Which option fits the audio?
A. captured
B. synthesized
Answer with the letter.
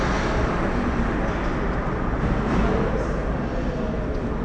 A